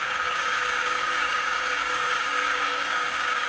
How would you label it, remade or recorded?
remade